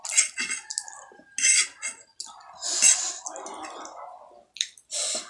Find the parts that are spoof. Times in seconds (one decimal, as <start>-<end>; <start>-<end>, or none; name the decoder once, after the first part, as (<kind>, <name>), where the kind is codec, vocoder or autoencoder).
none